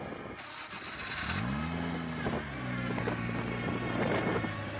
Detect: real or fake real